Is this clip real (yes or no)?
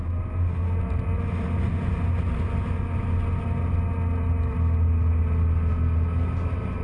yes